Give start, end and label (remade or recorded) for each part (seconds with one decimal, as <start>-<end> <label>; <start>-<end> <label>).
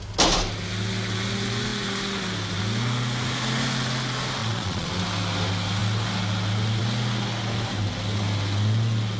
0.0-4.4 recorded; 4.4-4.9 remade; 4.9-9.2 recorded